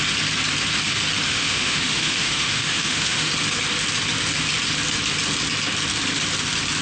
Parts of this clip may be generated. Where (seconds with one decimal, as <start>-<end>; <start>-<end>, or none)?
1.3-3.3